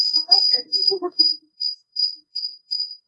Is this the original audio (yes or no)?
no